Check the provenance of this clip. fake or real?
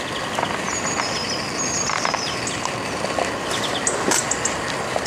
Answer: real